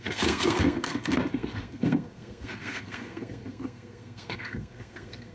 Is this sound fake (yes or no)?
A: yes